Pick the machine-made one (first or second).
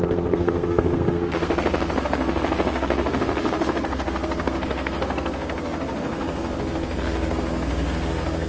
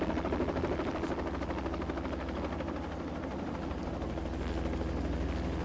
first